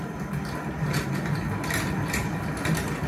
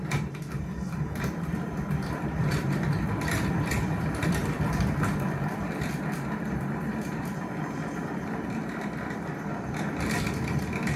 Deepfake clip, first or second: second